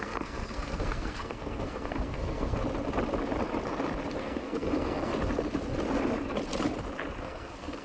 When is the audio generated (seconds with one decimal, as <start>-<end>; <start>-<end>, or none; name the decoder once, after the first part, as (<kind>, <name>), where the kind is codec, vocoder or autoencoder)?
0.0-2.6 (codec, SNAC); 4.1-5.1; 7.2-7.8